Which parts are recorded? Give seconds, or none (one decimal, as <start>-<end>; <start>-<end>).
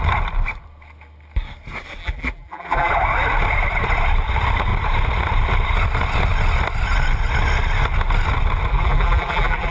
0.0-2.0; 2.9-8.7